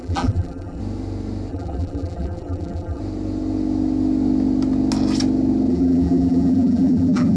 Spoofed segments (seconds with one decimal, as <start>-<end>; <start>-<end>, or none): 0.0-0.8; 1.5-3.0; 5.7-7.4